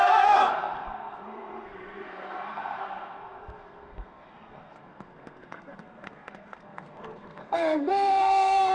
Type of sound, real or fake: fake